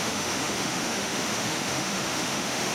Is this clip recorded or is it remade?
remade